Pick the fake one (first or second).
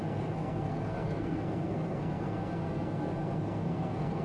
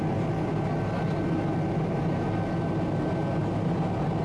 first